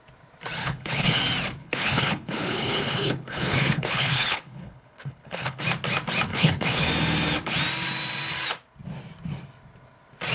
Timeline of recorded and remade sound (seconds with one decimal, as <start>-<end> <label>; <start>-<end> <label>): 0.0-0.6 recorded; 0.6-1.2 remade; 1.2-1.6 recorded; 1.6-5.6 remade; 5.6-6.3 recorded; 6.3-6.9 remade; 6.9-10.3 recorded